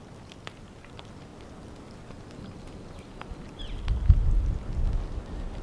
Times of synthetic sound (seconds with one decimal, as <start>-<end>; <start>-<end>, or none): none